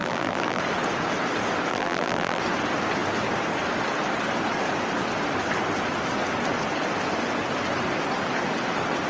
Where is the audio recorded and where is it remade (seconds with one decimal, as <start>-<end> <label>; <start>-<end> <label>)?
0.0-0.6 remade; 0.6-1.7 recorded; 1.7-2.4 remade; 2.4-9.1 recorded